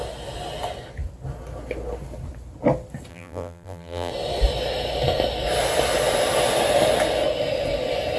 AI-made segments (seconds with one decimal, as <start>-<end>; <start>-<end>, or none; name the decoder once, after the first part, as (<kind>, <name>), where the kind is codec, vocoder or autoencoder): 3.1-4.1 (vocoder, BigVGAN v2)